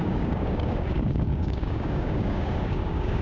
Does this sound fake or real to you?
fake